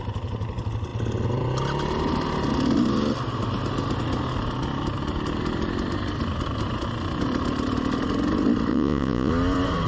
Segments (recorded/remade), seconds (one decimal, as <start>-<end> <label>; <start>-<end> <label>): 0.0-8.7 recorded; 8.7-9.3 remade; 9.3-9.9 recorded